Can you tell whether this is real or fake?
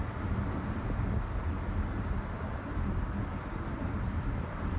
real